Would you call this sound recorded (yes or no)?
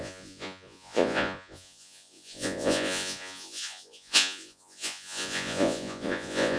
no